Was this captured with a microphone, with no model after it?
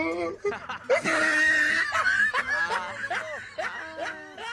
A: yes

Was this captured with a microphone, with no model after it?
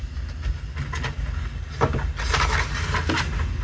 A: yes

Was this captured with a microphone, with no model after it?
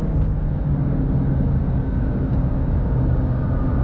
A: no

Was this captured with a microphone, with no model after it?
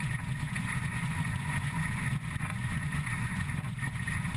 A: no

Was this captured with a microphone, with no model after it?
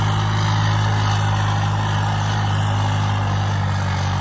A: yes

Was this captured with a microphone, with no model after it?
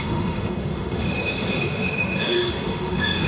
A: no